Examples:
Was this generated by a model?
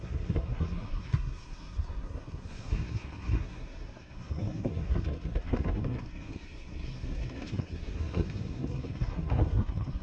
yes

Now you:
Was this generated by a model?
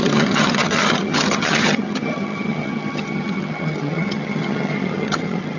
yes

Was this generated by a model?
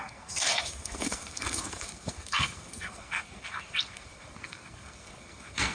yes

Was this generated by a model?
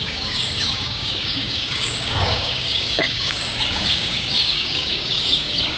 yes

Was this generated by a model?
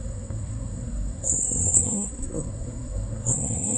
yes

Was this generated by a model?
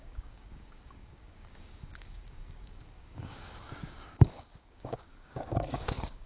yes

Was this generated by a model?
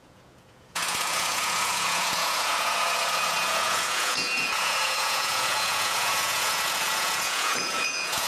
yes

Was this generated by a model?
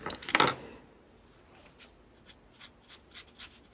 no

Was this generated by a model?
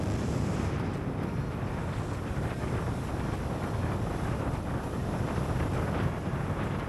no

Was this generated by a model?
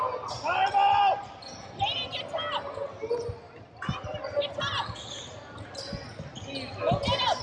no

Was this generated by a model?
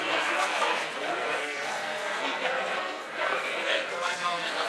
yes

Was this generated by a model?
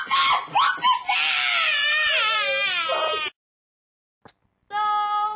no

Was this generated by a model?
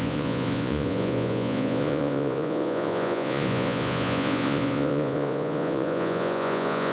yes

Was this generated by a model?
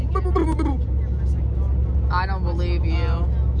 no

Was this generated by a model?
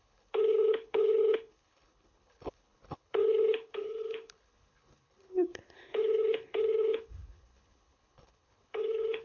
yes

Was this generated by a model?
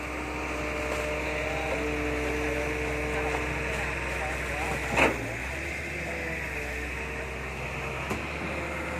no